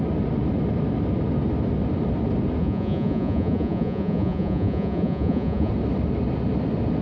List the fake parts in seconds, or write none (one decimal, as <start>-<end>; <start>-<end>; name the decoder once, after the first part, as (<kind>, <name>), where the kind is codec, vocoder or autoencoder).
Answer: 2.6-5.7 (vocoder, Vocos)